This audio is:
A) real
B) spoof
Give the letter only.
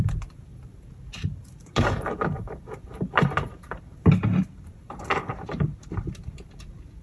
B